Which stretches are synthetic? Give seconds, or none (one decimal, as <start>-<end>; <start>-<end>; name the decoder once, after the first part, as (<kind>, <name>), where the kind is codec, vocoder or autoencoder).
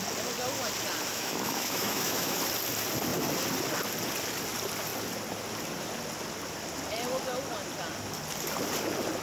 1.1-2.4 (autoencoder, DAC-VAE)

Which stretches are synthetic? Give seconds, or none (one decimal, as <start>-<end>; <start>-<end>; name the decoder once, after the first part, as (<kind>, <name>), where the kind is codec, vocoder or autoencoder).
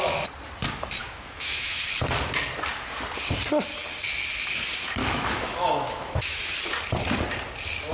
1.0-1.8 (autoencoder, DAC-VAE); 5.0-6.4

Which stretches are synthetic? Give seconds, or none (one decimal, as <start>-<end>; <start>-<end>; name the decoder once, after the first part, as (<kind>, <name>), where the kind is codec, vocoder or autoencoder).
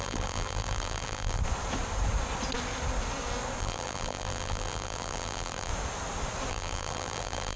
0.0-1.4 (vocoder, BigVGAN v2); 3.6-5.7; 6.5-7.6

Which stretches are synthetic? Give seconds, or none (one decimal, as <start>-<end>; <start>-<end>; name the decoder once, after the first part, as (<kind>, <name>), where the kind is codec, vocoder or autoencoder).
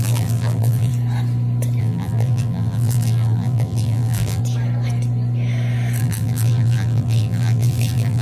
0.0-0.9 (vocoder, BigVGAN v2); 1.8-4.4; 6.0-8.2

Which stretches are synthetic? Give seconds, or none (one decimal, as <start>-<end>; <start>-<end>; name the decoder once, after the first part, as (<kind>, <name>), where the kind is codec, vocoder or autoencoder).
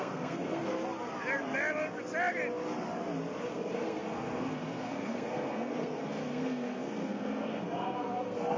0.0-0.7 (codec, SNAC); 3.5-8.6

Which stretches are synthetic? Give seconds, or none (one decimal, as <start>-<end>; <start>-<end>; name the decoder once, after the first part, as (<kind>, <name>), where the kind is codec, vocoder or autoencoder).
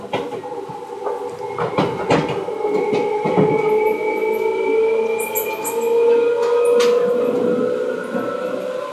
none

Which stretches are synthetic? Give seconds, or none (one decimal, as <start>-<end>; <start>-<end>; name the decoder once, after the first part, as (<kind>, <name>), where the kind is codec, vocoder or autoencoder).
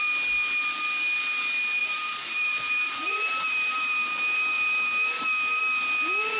1.8-5.6 (vocoder, BigVGAN v2)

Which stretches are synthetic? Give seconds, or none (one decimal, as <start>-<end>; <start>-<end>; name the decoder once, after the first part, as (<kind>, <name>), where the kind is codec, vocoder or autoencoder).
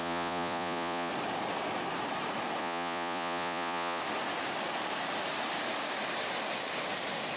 0.0-1.1 (vocoder, Vocos); 2.6-4.0